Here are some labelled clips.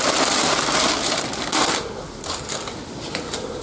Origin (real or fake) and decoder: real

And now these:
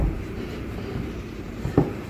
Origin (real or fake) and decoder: fake, vocoder, BigVGAN v2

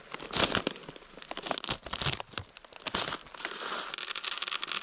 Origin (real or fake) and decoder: real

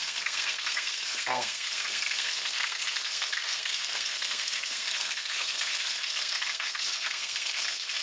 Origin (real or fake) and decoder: fake, codec, SNAC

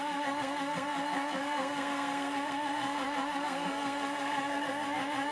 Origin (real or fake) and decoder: fake, codec, SNAC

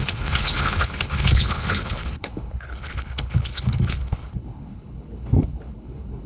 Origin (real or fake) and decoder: fake, codec, HILCodec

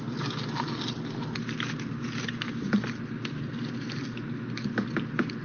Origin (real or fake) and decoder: real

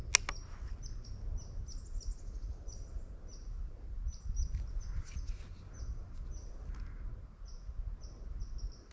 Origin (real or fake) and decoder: real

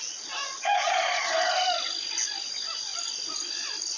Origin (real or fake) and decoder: real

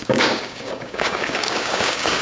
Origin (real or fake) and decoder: fake, codec, DAC